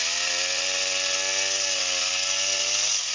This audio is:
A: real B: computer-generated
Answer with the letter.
A